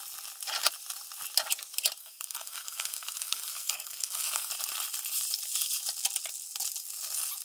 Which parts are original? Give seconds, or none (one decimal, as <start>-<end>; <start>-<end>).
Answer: 0.0-2.0; 4.5-7.4